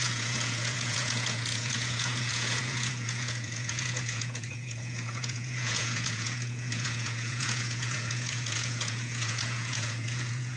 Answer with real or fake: fake